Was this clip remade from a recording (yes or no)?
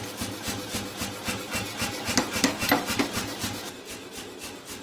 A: no